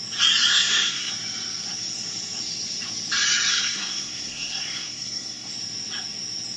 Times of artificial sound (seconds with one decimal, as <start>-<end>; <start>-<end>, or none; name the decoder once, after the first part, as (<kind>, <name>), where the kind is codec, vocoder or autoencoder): 0.5-1.1 (codec, SNAC); 3.5-5.5